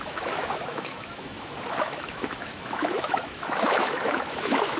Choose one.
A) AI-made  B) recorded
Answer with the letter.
A